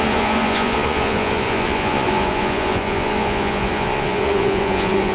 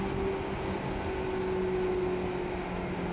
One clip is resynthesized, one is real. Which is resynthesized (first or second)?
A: first